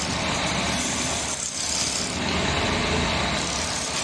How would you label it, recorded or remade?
recorded